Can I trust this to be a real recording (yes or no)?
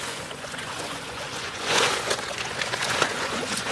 no